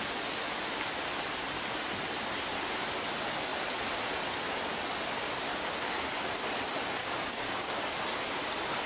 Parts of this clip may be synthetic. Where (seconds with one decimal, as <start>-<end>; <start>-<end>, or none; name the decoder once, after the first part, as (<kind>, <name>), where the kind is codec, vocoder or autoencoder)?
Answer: 7.0-7.8 (codec, DAC)